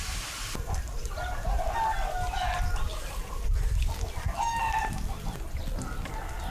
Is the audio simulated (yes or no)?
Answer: no